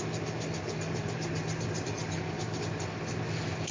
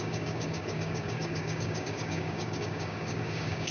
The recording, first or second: first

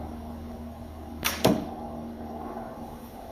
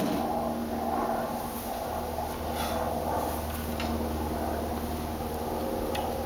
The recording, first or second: second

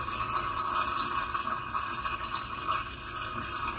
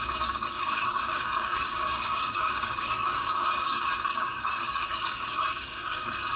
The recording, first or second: first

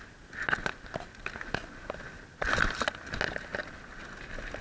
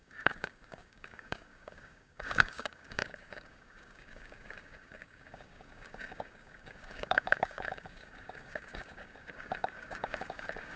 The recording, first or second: first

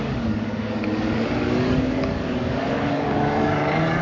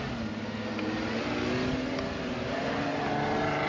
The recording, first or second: second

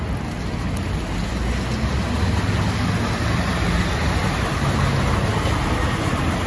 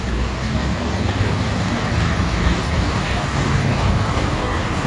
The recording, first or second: first